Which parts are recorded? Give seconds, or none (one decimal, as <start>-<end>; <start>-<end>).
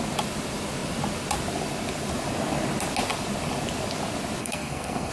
0.0-4.4